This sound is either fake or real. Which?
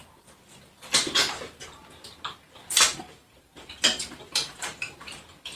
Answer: fake